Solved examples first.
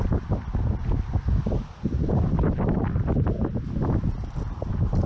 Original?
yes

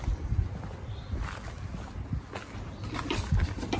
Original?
yes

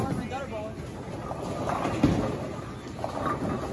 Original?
yes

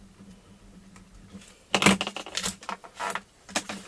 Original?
yes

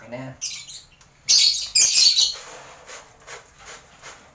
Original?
yes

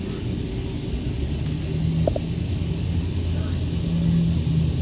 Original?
yes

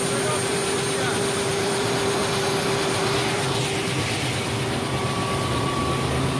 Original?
yes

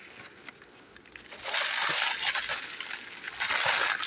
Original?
yes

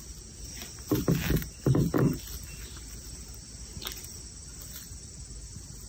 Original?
yes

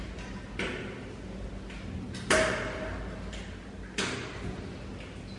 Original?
yes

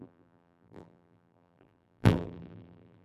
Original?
no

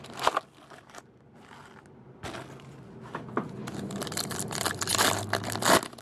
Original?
yes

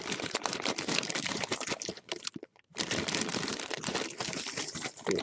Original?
no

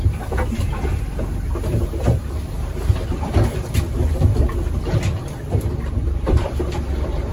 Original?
no